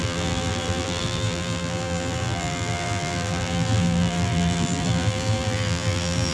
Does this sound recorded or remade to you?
remade